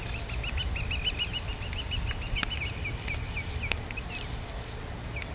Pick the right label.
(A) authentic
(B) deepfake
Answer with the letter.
A